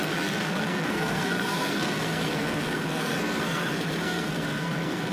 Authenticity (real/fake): fake